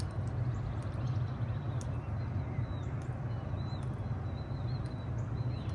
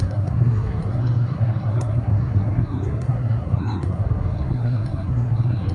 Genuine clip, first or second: first